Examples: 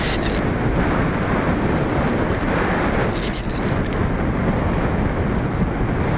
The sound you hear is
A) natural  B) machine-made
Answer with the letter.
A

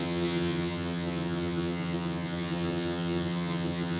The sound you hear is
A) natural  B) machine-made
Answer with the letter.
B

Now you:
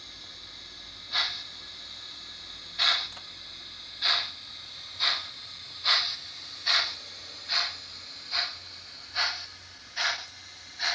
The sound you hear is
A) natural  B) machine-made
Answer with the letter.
A